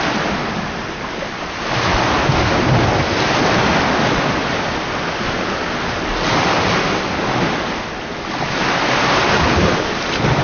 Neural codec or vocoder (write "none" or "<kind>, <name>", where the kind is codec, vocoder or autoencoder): none